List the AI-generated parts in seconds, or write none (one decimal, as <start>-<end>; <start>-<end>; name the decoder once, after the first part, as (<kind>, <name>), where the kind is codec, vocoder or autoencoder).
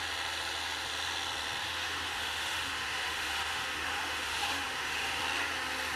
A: 1.6-5.2 (autoencoder, DAC-VAE)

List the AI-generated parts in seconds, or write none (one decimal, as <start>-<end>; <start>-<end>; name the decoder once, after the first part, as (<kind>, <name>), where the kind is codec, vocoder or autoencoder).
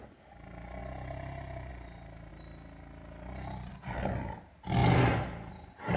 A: none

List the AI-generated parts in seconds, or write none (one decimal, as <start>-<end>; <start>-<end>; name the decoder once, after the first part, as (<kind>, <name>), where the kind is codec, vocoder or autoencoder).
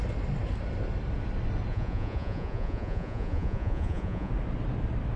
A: 1.7-4.3 (vocoder, Vocos)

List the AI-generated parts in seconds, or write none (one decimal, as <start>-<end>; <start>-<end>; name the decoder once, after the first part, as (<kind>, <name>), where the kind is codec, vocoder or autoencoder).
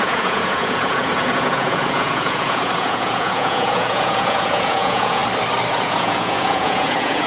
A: 0.0-5.2 (vocoder, Vocos); 5.7-7.3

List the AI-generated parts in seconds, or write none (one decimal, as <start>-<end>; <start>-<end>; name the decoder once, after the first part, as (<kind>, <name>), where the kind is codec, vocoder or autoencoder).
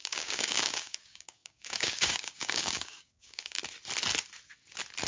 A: 0.0-3.6 (codec, DAC)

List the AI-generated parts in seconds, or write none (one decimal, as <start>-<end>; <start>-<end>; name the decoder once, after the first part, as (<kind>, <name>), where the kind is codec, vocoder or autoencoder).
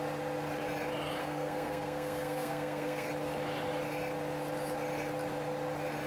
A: 1.2-3.1 (codec, SNAC)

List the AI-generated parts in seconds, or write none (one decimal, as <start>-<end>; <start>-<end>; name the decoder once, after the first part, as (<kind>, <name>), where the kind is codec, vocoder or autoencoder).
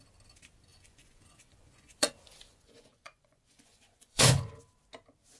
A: 0.7-2.1 (vocoder, Vocos); 2.5-4.5